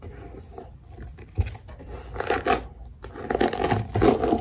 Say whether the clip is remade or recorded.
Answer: recorded